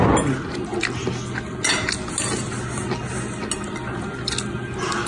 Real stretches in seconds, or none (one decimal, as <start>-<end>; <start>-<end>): 0.0-5.1